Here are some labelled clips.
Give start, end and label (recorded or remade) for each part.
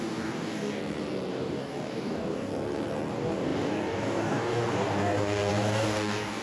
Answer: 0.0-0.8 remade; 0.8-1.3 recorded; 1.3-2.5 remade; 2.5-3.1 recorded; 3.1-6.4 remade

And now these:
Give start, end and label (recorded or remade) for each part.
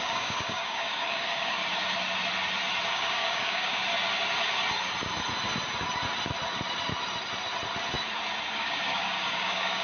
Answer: 0.0-1.6 remade; 1.6-2.9 recorded; 2.9-3.8 remade; 3.8-8.5 recorded; 8.5-9.8 remade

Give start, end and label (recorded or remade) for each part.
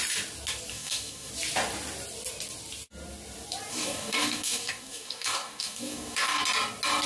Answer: 0.0-0.7 recorded; 0.7-1.3 remade; 1.3-3.7 recorded; 3.7-6.4 remade; 6.4-7.1 recorded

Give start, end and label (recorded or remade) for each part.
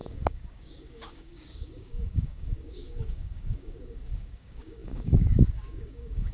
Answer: 0.0-6.3 remade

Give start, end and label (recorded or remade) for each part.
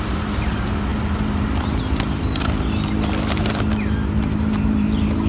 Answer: 0.0-5.3 recorded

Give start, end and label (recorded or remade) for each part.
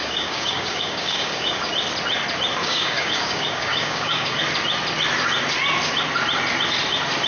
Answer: 0.0-1.7 remade; 1.7-2.6 recorded; 2.6-4.4 remade; 4.4-7.3 recorded